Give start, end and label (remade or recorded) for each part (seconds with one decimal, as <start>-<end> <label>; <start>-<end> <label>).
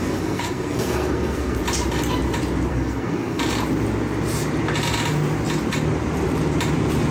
0.0-1.6 remade; 1.6-2.7 recorded; 2.7-3.4 remade; 3.4-7.1 recorded